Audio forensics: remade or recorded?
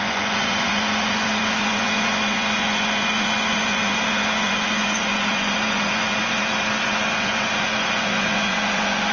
remade